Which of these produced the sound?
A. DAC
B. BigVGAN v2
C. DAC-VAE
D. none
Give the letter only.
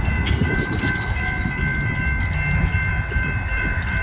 B